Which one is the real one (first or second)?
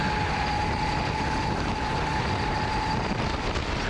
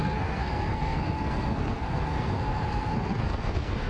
first